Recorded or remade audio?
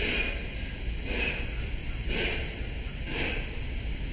recorded